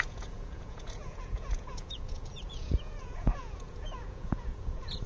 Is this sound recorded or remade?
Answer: remade